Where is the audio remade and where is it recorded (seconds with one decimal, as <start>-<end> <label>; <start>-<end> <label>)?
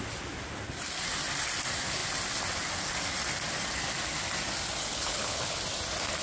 0.0-4.8 recorded; 4.8-5.6 remade; 5.6-6.2 recorded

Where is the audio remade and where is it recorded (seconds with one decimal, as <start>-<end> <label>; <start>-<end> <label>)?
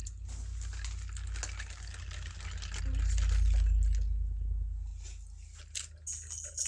0.0-6.7 recorded